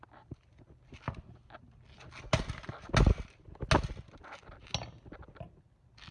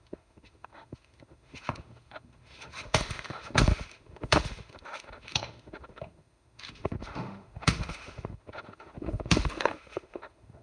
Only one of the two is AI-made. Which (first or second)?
second